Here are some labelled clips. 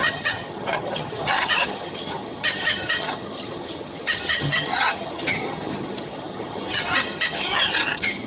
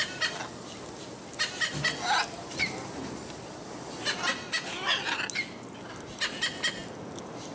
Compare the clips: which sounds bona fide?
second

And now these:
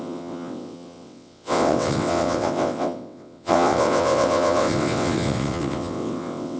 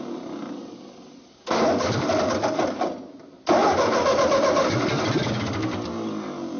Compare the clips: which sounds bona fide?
second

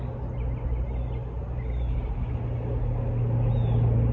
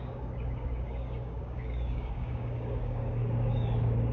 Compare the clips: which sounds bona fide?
first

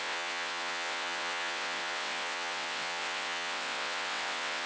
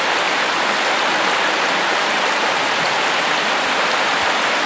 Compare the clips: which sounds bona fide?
second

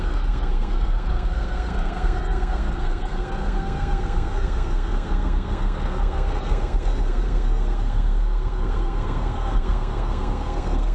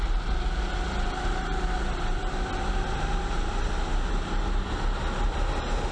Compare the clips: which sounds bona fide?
second